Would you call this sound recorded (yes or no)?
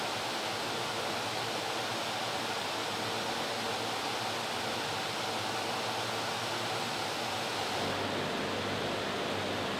yes